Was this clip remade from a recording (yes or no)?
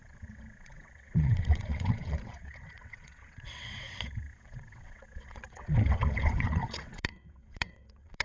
yes